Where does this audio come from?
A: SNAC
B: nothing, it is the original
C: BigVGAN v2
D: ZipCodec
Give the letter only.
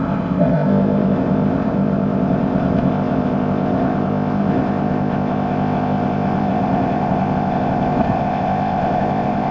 D